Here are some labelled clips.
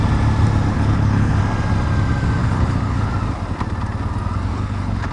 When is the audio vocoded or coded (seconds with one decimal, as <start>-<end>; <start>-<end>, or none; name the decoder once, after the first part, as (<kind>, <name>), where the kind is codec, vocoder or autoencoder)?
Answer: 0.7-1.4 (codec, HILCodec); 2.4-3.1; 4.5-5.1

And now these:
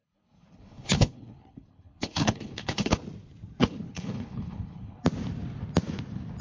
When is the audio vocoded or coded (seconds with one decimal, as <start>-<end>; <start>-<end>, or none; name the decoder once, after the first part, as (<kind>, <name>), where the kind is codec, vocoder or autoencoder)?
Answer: 0.0-3.0 (codec, HILCodec); 3.6-5.0

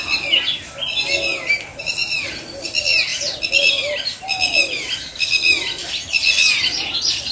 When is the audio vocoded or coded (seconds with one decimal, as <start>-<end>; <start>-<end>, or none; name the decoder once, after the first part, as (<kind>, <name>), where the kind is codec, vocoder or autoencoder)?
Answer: none

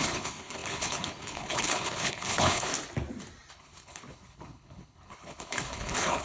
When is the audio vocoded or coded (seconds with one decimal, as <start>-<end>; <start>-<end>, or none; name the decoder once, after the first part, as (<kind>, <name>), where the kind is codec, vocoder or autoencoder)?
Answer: 0.0-2.7 (codec, HILCodec); 3.5-6.2

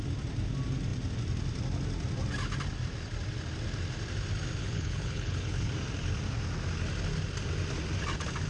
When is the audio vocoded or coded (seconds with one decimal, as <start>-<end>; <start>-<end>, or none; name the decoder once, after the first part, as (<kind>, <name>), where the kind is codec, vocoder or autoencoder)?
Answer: 4.6-5.7 (codec, HILCodec)

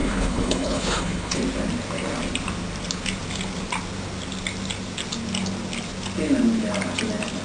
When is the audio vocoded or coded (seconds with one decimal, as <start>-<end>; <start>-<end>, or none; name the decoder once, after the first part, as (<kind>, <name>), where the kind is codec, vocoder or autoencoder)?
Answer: 0.0-1.4 (codec, HILCodec)

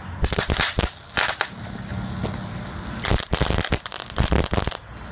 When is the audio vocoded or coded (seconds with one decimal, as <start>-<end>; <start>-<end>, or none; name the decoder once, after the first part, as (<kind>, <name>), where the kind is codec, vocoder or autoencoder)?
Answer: none